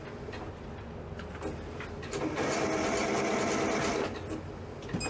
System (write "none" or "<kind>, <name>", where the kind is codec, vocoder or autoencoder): none